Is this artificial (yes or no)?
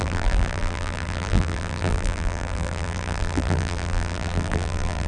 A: yes